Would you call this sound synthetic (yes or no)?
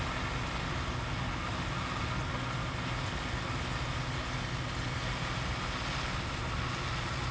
no